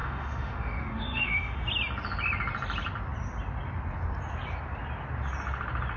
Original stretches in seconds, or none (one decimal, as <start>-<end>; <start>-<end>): 1.6-6.0